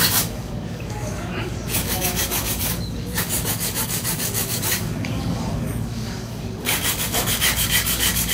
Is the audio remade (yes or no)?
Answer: yes